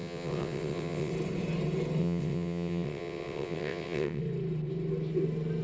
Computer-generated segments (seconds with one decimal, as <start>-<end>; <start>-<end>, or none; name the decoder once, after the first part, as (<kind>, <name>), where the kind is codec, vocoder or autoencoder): 0.0-1.1 (vocoder, WaveNeXt); 2.0-4.2